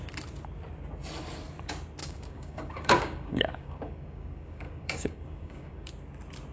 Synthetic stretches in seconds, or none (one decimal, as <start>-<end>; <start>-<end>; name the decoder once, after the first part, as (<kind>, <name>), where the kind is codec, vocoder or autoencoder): 2.0-5.9 (codec, DAC)

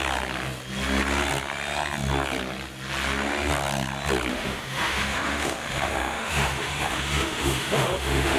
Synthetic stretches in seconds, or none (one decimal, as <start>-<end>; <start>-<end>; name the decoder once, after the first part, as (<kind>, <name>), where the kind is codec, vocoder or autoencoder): 4.3-8.4 (autoencoder, DAC-VAE)

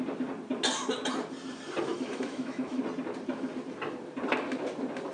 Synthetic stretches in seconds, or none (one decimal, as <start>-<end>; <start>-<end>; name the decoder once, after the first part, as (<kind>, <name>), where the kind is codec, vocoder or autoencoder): 1.9-2.8 (autoencoder, DAC-VAE)

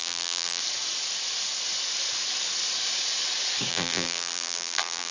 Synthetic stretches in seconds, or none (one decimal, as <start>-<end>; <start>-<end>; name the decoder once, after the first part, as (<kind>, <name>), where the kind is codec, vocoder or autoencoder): 0.0-0.6 (vocoder, BigVGAN v2); 3.7-5.1